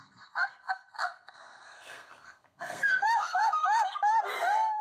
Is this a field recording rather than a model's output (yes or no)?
no